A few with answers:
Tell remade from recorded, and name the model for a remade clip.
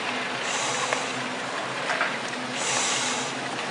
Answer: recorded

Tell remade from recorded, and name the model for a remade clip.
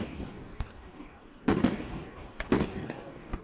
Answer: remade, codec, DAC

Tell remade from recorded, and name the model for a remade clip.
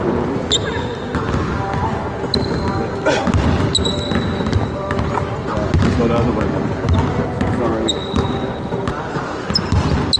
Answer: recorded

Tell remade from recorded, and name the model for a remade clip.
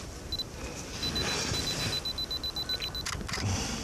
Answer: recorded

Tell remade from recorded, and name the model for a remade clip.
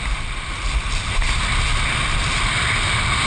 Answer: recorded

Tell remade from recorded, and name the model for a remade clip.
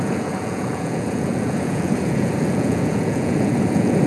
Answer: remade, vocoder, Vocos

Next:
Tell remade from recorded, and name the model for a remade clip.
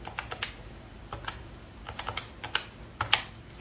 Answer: recorded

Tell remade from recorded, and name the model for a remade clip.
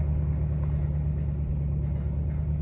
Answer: recorded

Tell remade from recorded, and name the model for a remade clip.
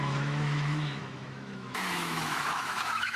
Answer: remade, autoencoder, DAC-VAE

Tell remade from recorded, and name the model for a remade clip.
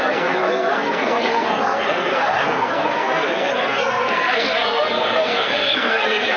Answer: remade, codec, SNAC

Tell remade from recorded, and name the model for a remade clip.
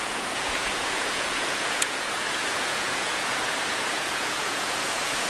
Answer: remade, vocoder, Vocos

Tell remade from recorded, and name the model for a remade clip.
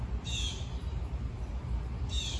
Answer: recorded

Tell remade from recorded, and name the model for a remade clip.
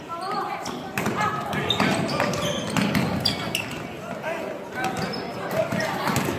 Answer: recorded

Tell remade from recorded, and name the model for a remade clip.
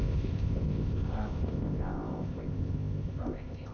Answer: remade, codec, ZipCodec